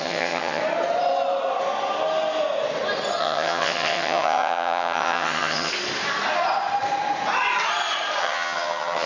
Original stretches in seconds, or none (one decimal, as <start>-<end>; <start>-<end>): 0.6-3.2; 5.7-8.2